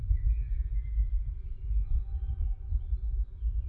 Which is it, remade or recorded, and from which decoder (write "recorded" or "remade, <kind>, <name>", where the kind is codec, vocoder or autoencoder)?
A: remade, vocoder, Vocos